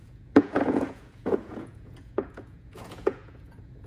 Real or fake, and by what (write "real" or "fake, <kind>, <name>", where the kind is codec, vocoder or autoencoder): fake, vocoder, Vocos